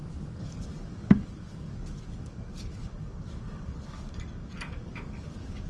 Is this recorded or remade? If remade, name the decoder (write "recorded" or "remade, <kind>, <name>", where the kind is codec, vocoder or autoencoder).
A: remade, codec, DAC